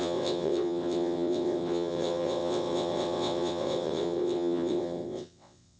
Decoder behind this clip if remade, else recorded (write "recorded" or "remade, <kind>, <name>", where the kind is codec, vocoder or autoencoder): remade, vocoder, WaveNeXt